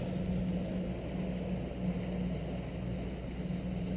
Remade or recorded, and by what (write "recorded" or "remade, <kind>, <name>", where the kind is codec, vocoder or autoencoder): recorded